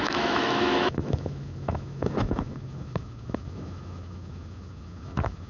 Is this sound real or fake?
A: fake